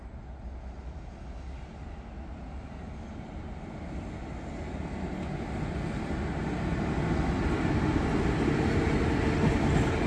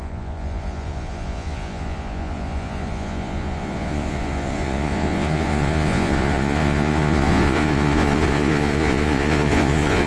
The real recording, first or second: first